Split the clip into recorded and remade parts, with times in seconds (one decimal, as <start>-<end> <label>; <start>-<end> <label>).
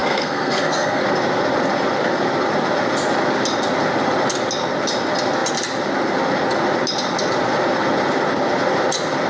0.0-1.0 remade; 1.0-9.3 recorded